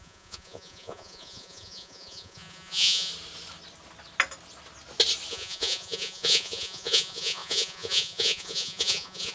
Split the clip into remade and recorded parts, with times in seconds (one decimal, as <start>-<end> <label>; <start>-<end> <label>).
0.0-3.1 remade; 3.1-5.3 recorded; 5.3-9.3 remade